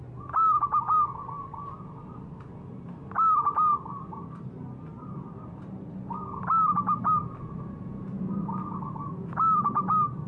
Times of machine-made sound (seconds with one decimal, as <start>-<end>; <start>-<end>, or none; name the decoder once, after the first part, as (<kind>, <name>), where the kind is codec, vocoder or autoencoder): 3.7-5.9 (vocoder, BigVGAN v2)